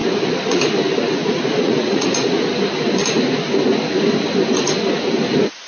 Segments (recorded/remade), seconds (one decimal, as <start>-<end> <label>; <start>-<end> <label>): 0.0-0.6 remade; 0.6-1.2 recorded; 1.2-2.4 remade; 2.4-5.7 recorded